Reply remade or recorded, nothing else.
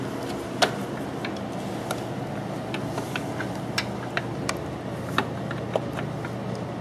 recorded